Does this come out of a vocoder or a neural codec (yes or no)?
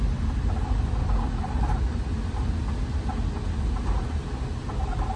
no